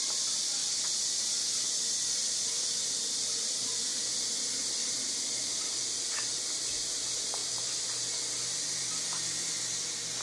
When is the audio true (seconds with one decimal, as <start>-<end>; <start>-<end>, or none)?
0.0-10.2